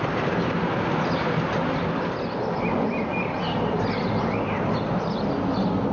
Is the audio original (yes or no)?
yes